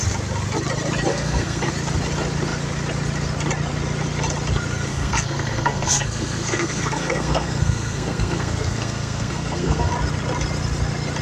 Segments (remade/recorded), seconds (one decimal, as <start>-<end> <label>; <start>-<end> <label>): 0.0-1.1 recorded; 1.1-1.7 remade; 1.7-4.9 recorded; 4.9-9.9 remade; 9.9-11.2 recorded